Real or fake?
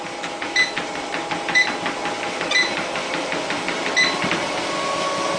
real